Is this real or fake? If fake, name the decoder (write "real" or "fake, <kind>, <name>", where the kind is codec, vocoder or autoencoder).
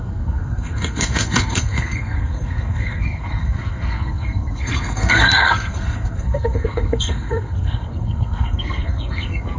fake, codec, SNAC